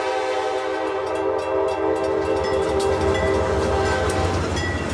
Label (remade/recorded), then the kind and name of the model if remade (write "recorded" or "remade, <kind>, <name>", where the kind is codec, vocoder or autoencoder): recorded